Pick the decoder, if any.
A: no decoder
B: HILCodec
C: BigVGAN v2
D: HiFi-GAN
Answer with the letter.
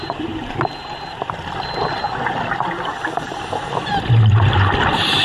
A